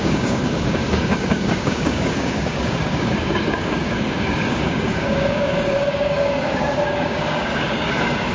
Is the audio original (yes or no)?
no